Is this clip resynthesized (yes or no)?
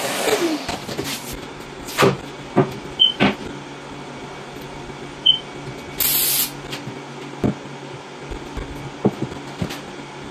no